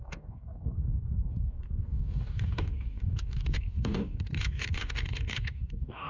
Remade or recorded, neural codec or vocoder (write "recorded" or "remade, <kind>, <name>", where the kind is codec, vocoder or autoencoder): remade, codec, DAC